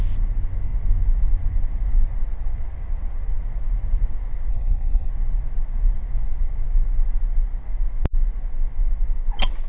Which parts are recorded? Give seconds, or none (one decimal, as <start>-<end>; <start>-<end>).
0.0-4.5; 5.1-9.7